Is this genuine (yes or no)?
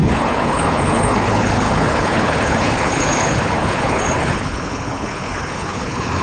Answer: no